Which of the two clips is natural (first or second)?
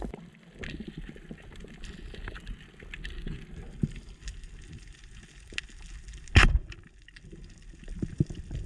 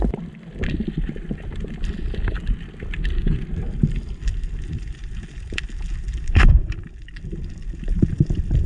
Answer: first